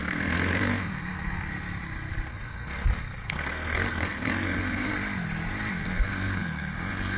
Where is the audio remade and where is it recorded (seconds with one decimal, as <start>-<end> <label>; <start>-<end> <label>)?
0.0-1.5 remade; 1.5-2.3 recorded; 2.3-4.9 remade; 4.9-5.8 recorded; 5.8-7.2 remade